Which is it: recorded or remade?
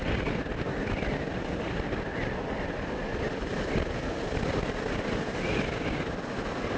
recorded